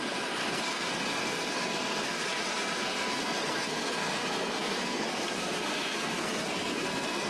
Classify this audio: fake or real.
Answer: fake